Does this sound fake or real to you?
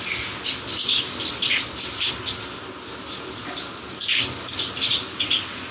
real